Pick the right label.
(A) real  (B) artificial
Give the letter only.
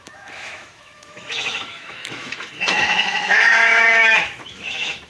B